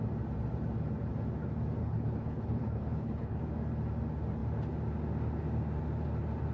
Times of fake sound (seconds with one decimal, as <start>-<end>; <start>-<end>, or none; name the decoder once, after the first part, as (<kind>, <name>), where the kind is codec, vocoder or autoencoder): 1.8-3.4 (codec, HILCodec)